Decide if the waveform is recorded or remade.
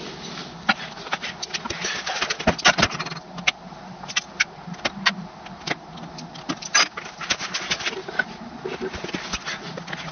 recorded